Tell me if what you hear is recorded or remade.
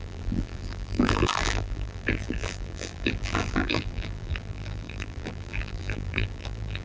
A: remade